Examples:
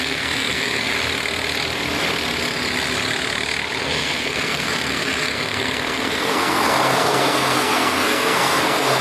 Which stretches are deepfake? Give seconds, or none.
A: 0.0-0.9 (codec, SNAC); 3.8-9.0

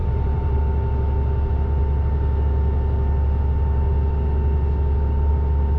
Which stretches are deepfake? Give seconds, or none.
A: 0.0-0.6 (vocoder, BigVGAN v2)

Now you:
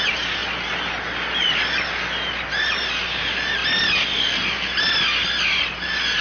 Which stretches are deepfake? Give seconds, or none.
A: none